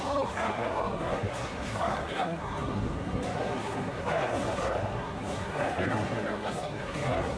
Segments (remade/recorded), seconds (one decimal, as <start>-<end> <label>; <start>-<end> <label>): 0.0-7.4 remade